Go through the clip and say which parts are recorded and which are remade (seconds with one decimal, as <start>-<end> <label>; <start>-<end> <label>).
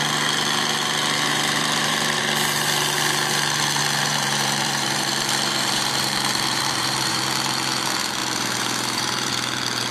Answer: 0.0-1.3 recorded; 1.3-2.2 remade; 2.2-3.8 recorded; 3.8-7.2 remade; 7.2-8.2 recorded; 8.2-9.3 remade; 9.3-9.9 recorded